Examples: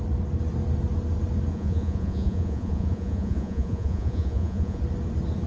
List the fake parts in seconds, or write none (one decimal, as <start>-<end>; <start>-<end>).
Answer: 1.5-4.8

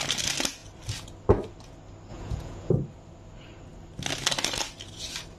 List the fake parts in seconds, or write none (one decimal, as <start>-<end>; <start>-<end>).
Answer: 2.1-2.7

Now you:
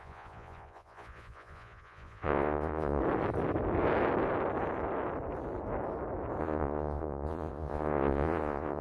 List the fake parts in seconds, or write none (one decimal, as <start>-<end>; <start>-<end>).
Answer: 0.0-3.0; 6.4-8.8